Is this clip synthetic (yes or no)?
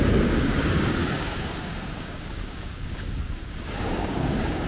yes